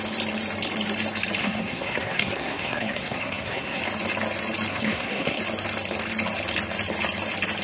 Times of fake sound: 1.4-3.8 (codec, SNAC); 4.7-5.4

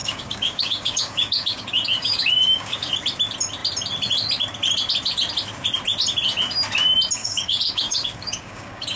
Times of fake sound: 0.0-2.9 (codec, DAC); 7.2-9.0

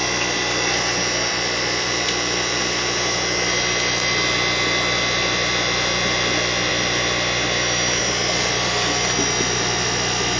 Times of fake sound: none